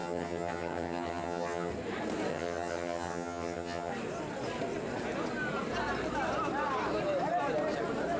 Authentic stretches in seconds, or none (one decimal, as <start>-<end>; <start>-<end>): 1.7-2.3; 3.9-8.2